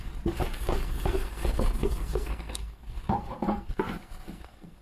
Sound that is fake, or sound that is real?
fake